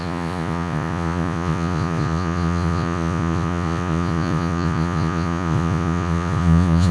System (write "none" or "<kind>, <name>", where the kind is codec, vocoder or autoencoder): vocoder, Vocos